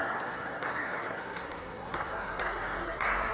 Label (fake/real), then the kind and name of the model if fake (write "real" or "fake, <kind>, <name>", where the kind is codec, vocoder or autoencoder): fake, codec, SNAC